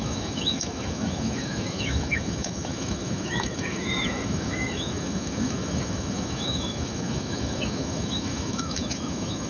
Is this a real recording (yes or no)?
no